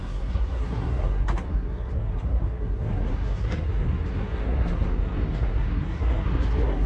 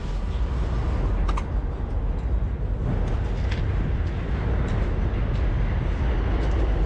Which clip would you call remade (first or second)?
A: first